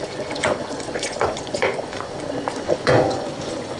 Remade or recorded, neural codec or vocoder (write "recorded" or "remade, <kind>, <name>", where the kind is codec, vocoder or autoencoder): remade, vocoder, Vocos